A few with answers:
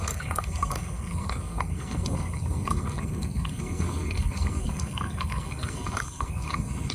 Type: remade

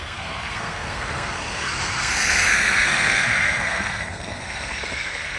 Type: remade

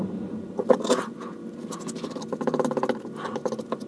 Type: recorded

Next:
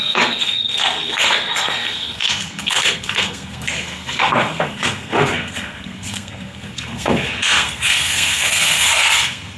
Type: remade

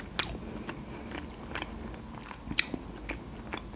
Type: recorded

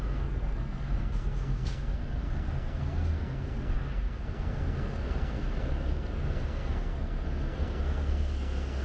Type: remade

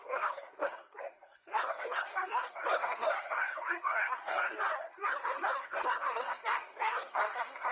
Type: remade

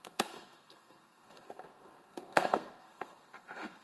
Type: remade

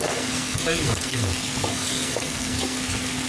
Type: remade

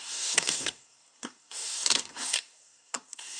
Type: remade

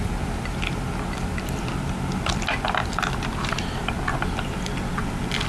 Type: recorded